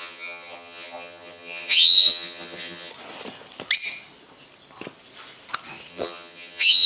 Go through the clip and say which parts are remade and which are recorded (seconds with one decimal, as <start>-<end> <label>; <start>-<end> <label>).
0.0-2.9 remade; 2.9-5.9 recorded; 5.9-6.9 remade